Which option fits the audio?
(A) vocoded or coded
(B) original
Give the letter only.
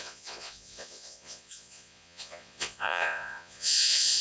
A